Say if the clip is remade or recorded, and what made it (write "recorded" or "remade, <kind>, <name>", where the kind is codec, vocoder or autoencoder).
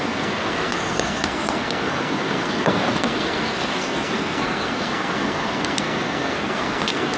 remade, codec, SNAC